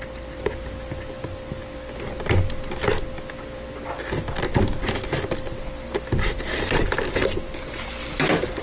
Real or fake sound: real